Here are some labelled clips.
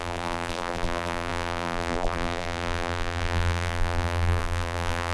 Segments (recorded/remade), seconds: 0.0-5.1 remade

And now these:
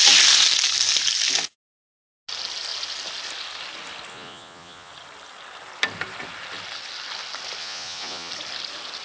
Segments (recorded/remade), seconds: 0.0-4.1 recorded; 4.1-4.9 remade; 4.9-7.6 recorded; 7.6-8.3 remade; 8.3-9.0 recorded

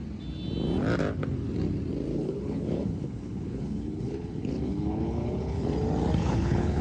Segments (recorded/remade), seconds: 0.0-2.1 recorded; 2.1-5.7 remade; 5.7-6.2 recorded; 6.2-6.8 remade

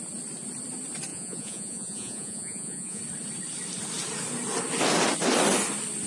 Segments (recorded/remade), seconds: 0.0-1.1 recorded; 1.1-3.0 remade; 3.0-6.1 recorded

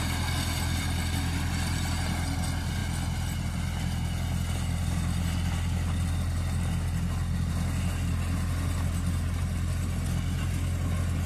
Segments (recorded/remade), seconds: 0.0-11.3 recorded

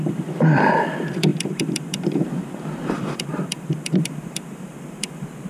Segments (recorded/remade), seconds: 0.0-5.5 remade

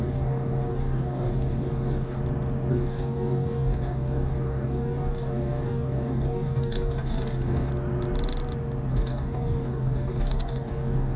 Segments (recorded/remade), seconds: 0.0-2.2 remade; 2.2-2.7 recorded; 2.7-7.7 remade; 7.7-8.9 recorded; 8.9-11.2 remade